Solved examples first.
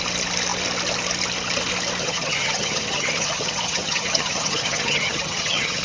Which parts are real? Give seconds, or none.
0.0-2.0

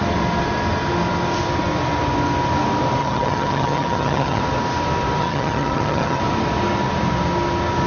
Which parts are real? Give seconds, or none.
0.0-3.0; 4.4-5.2; 6.2-7.9